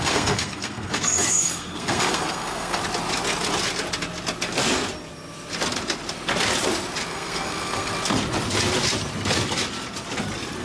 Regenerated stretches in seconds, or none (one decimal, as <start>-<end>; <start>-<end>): 0.0-2.8; 7.1-7.9